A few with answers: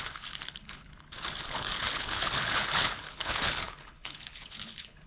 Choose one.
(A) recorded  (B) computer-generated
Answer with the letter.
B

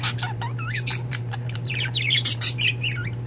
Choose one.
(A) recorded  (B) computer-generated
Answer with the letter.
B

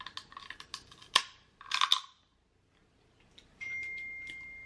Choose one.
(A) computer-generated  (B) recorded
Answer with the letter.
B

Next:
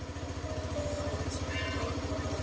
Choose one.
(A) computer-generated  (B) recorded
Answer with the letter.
B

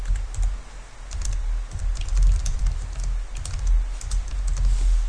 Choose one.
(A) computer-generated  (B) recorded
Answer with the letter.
B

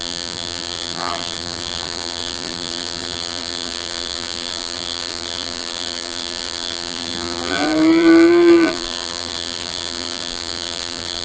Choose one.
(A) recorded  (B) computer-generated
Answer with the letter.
B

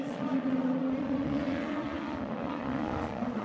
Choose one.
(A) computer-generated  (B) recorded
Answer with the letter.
A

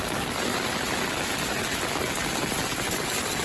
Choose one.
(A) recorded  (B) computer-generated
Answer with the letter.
A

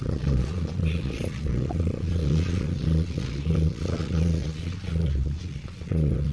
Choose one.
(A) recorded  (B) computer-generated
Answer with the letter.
B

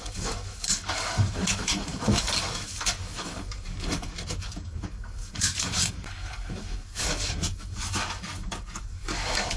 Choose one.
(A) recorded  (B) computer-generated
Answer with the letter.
B